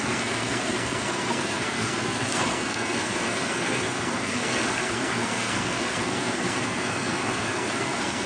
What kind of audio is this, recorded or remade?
remade